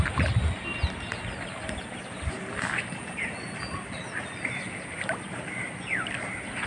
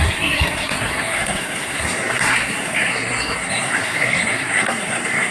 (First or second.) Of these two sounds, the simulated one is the second